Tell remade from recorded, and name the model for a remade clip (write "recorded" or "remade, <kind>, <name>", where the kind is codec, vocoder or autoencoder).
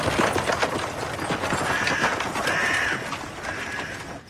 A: recorded